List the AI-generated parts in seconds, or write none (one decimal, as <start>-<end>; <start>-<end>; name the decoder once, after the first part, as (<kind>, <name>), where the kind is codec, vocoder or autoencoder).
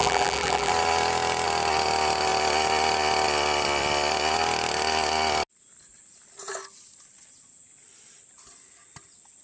0.0-0.7 (vocoder, BigVGAN v2)